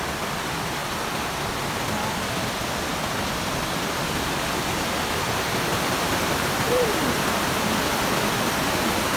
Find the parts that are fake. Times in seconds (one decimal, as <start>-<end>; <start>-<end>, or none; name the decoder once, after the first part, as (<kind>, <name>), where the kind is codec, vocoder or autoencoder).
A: 0.8-1.5 (vocoder, BigVGAN v2); 5.7-7.6